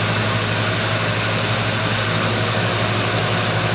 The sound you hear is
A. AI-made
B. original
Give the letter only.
B